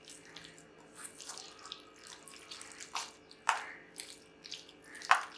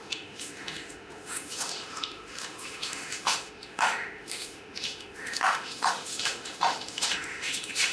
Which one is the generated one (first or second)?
second